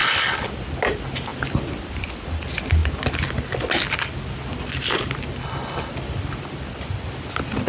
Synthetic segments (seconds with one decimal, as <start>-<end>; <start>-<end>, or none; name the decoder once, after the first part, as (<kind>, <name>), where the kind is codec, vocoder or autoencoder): 0.0-0.5 (codec, HILCodec); 5.4-5.9